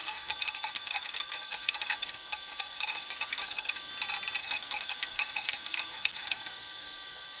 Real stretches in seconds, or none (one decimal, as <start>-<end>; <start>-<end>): 3.9-4.4